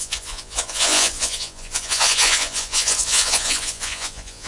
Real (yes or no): no